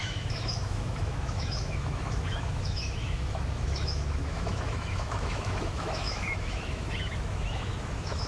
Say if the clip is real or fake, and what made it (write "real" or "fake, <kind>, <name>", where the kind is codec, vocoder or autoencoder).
fake, autoencoder, DAC-VAE